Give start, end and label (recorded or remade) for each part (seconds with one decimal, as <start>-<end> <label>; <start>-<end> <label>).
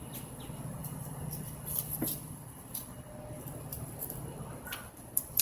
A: 0.0-0.8 recorded; 0.8-2.6 remade; 2.6-3.7 recorded; 3.7-5.4 remade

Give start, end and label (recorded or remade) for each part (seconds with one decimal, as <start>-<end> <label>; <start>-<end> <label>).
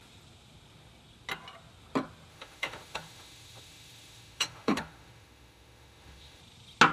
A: 0.0-2.3 recorded; 2.3-6.4 remade; 6.4-6.9 recorded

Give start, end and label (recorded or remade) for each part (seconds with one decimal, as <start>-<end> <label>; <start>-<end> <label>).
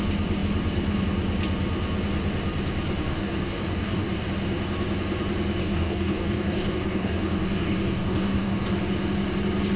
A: 0.0-3.1 recorded; 3.1-4.1 remade; 4.1-5.6 recorded; 5.6-8.7 remade; 8.7-9.8 recorded